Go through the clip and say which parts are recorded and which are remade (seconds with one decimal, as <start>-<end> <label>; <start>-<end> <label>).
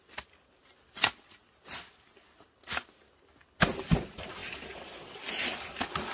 0.0-6.1 recorded